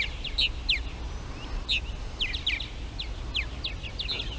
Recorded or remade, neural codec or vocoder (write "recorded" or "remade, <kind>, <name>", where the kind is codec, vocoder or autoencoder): recorded